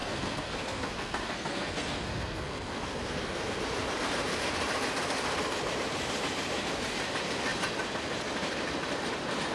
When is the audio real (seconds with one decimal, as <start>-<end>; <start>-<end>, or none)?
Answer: 3.6-9.5